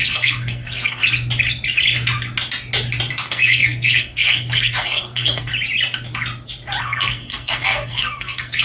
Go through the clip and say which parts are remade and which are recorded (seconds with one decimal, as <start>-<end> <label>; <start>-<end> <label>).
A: 0.0-1.0 remade; 1.0-3.1 recorded; 3.1-5.5 remade; 5.5-6.8 recorded; 6.8-8.6 remade